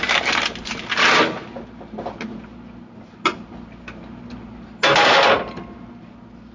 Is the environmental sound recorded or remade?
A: recorded